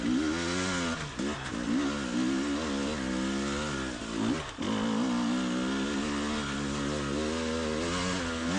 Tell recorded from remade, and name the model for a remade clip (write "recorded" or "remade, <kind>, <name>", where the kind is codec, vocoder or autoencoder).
recorded